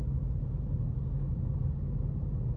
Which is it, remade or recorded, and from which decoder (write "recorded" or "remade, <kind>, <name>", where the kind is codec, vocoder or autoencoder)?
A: recorded